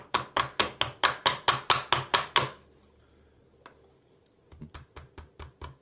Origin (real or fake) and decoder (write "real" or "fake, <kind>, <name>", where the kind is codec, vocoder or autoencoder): real